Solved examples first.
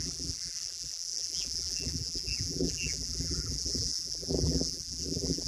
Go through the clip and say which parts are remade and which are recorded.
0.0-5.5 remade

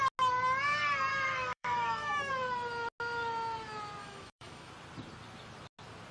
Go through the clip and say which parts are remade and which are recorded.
0.0-1.1 recorded; 1.1-2.3 remade; 2.3-4.0 recorded; 4.0-4.7 remade; 4.7-6.1 recorded